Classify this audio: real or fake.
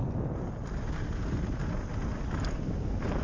real